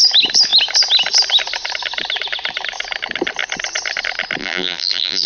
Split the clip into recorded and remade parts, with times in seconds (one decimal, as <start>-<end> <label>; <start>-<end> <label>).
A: 0.0-4.4 recorded; 4.4-5.3 remade